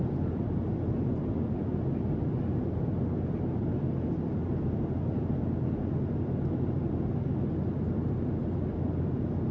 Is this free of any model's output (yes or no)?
yes